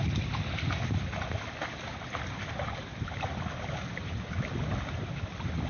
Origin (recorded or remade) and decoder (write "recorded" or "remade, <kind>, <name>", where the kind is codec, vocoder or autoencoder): recorded